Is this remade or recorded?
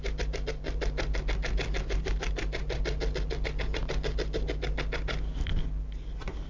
recorded